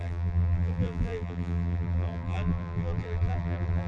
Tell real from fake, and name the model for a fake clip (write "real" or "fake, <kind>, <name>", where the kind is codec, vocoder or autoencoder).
fake, vocoder, BigVGAN v2